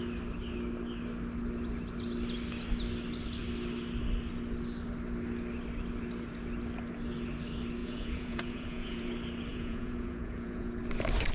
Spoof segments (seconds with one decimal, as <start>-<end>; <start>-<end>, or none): 7.8-9.1; 9.5-10.8